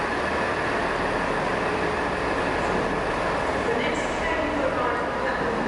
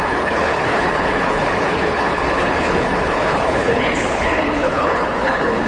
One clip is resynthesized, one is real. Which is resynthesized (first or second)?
second